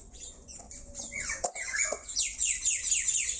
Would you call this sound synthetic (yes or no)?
yes